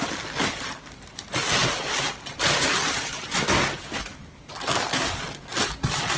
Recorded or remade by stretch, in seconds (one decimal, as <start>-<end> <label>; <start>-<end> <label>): 0.0-6.2 recorded